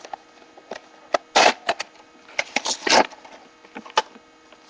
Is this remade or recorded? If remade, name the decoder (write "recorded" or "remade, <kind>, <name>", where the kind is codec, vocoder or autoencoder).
recorded